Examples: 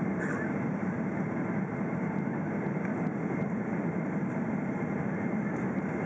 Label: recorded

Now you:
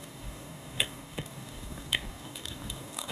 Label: remade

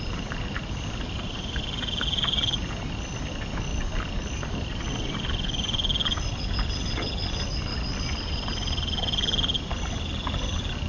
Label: recorded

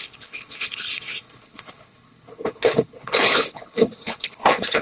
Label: remade